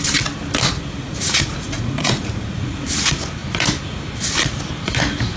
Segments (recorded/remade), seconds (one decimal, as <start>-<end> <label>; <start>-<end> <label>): 0.0-1.0 recorded; 1.0-2.8 remade; 2.8-5.4 recorded